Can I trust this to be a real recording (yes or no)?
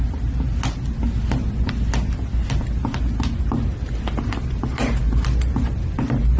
yes